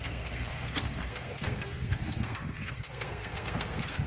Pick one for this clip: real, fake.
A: fake